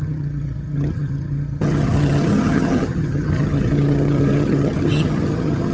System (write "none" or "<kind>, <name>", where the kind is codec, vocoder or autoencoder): vocoder, HiFi-GAN